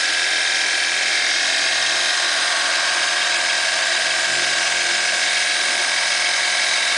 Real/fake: real